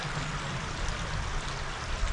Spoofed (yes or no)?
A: no